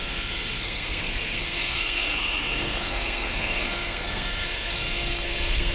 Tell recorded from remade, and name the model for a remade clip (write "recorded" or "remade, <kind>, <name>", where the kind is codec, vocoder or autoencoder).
remade, codec, SNAC